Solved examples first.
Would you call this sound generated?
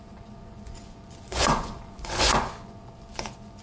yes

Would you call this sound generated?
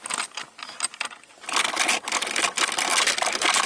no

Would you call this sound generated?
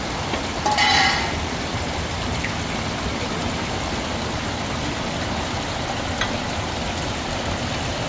no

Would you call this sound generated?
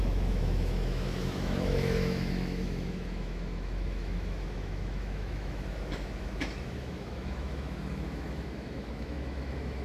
yes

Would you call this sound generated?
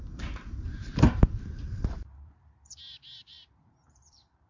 yes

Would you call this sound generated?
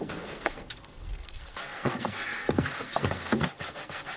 yes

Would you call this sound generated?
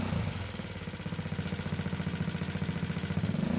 no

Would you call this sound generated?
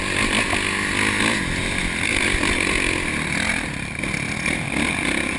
no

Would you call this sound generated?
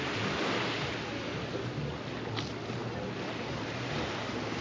no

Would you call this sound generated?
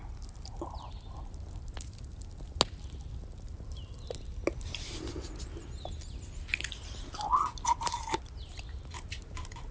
no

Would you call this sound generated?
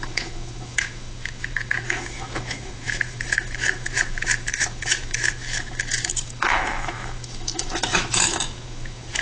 yes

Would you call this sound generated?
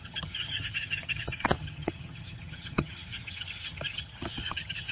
yes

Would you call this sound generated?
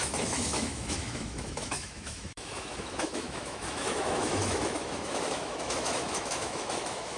yes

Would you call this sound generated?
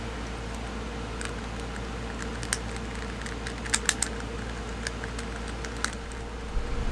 no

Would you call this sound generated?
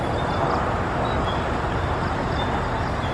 no